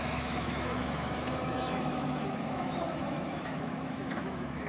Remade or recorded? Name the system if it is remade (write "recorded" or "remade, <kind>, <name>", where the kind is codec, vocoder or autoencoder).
remade, autoencoder, DAC-VAE